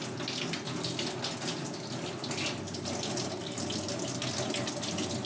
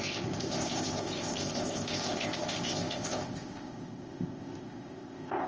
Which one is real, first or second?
first